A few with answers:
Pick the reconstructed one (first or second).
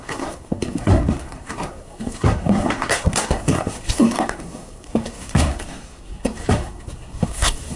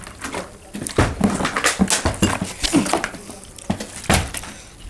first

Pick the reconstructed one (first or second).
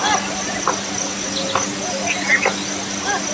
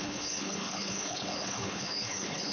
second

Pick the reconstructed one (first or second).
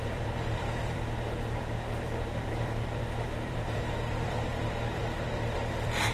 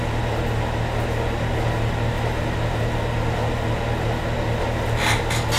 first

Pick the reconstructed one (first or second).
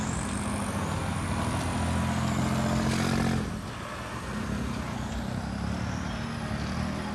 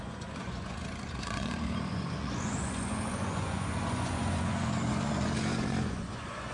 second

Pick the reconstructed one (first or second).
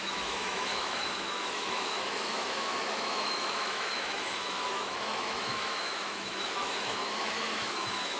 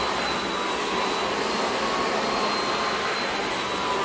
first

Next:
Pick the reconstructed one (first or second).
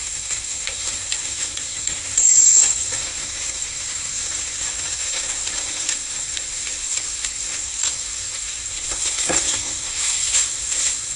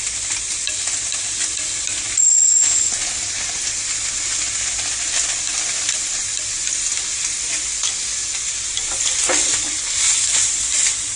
first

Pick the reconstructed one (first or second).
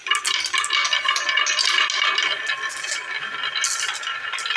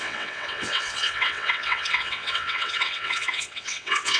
second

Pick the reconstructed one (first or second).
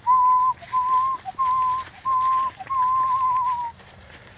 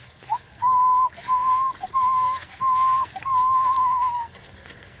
second